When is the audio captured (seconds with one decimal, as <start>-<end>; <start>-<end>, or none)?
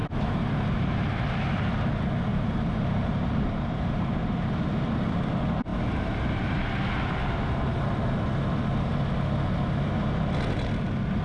0.0-2.3; 4.5-11.2